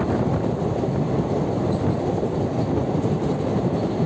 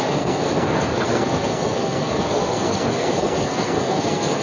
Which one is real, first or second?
first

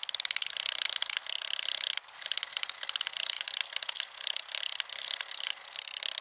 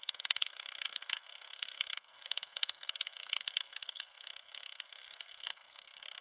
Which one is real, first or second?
first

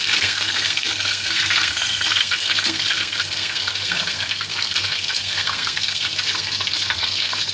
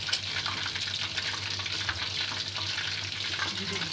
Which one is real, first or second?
second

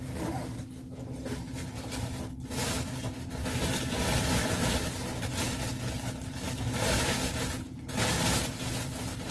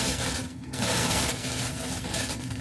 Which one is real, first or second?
first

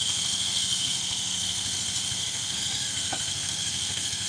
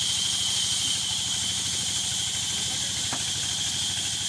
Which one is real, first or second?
second